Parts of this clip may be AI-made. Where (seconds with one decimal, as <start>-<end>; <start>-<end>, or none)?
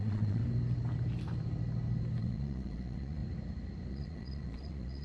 0.0-0.4; 2.2-3.2; 3.9-5.0